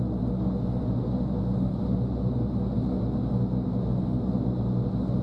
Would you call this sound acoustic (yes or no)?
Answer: yes